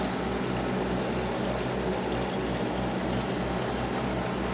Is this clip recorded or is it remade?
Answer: recorded